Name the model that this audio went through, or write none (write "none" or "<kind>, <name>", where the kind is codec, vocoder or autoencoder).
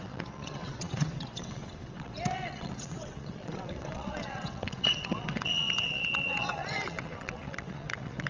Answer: vocoder, WaveNeXt